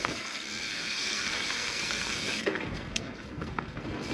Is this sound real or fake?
fake